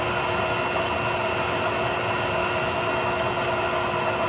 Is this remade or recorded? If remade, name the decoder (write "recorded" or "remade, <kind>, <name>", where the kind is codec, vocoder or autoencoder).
recorded